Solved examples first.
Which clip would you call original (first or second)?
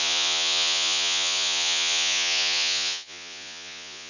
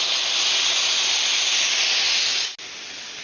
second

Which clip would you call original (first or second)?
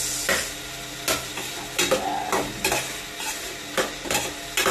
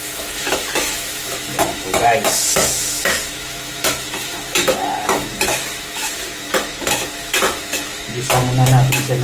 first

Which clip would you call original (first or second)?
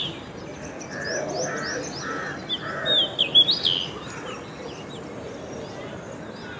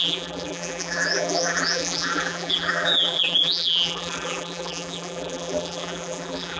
first